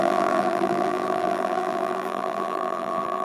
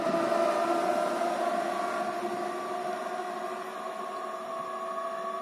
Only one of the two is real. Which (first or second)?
second